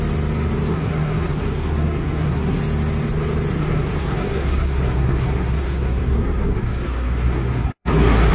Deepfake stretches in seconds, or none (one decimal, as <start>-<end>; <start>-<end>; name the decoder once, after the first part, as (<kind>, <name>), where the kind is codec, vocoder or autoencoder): 0.7-2.6 (codec, SNAC); 3.5-8.3

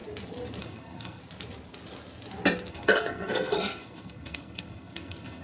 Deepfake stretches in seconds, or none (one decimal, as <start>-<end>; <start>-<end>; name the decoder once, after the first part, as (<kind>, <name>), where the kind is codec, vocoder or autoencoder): 0.6-1.2 (codec, SNAC); 2.7-5.4

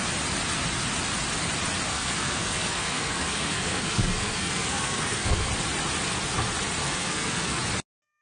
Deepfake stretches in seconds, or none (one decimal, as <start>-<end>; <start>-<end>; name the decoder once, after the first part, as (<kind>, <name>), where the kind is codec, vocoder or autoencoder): 1.9-5.5 (codec, SNAC); 6.8-7.6

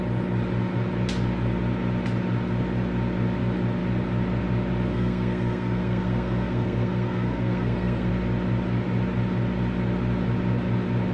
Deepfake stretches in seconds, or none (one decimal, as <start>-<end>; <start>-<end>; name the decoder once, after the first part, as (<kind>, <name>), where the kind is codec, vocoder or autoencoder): 4.9-8.1 (codec, SNAC)

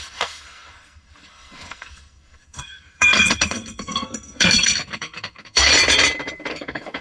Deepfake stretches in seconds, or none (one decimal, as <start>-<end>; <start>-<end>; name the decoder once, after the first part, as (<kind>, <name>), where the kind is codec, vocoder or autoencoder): 0.0-5.7 (codec, SNAC); 6.5-7.0

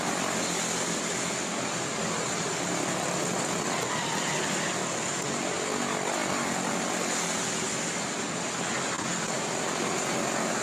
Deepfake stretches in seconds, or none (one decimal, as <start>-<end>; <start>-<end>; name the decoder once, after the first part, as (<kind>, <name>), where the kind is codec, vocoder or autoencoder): none

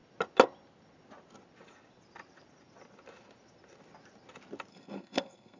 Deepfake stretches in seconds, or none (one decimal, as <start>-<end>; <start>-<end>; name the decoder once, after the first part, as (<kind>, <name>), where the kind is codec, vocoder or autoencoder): 4.7-5.6 (codec, SNAC)

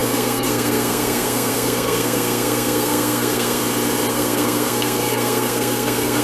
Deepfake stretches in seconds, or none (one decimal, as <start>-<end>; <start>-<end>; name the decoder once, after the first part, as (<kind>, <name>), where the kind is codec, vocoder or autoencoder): 0.0-3.6 (codec, SNAC); 4.1-6.2